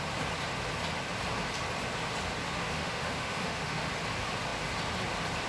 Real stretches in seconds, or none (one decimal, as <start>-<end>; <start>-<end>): 0.0-2.6; 3.9-5.5